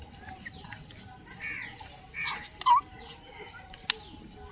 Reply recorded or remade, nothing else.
recorded